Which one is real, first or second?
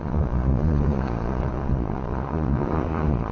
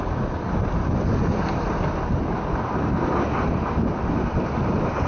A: second